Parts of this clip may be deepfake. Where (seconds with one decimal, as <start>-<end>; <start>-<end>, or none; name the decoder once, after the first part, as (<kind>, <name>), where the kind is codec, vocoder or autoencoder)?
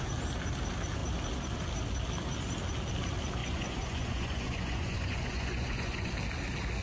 3.4-6.1 (vocoder, Vocos)